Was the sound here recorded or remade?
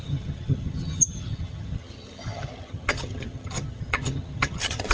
remade